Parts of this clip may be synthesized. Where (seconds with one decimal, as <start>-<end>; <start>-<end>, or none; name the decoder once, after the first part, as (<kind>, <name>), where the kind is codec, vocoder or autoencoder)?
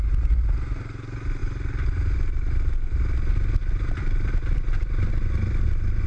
none